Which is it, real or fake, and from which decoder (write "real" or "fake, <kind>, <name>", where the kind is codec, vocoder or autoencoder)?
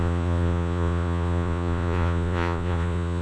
fake, vocoder, Vocos